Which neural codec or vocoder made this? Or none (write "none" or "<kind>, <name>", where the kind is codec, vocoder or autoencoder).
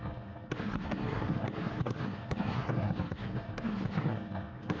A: codec, SNAC